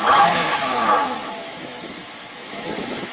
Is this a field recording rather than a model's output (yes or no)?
no